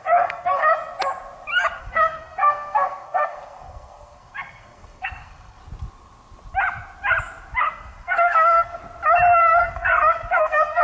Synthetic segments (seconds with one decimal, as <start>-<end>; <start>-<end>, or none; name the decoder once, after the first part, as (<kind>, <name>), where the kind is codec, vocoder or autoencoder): 0.0-0.6 (codec, SNAC); 1.8-5.6; 7.7-8.8; 9.6-10.8